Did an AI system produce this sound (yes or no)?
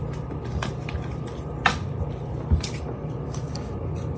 no